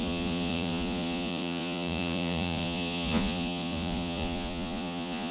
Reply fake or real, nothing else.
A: fake